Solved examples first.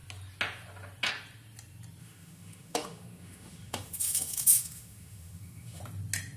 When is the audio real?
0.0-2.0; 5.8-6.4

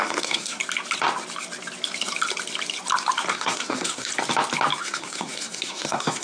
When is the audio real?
0.6-3.3; 4.1-4.8

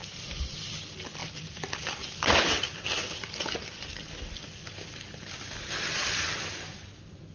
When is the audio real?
0.7-1.2; 5.6-7.3

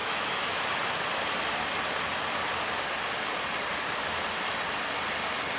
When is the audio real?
0.6-5.6